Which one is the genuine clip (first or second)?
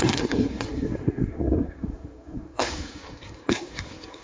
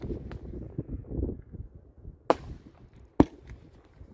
second